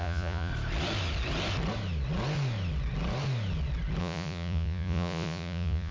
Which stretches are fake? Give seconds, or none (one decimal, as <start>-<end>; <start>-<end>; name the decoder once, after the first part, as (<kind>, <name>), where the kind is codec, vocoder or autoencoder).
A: 0.0-0.5 (vocoder, Vocos); 4.0-5.9